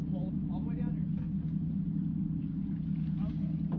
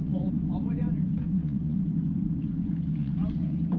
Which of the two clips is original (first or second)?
first